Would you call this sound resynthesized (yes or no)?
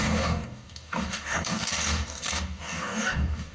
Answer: yes